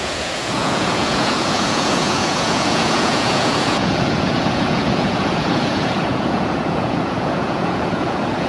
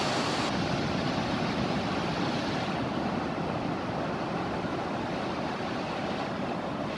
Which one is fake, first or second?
first